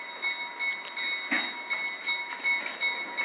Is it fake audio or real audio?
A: real